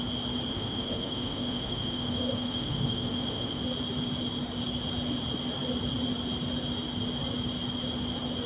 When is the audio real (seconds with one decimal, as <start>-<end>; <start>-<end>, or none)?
0.0-0.5; 3.6-8.5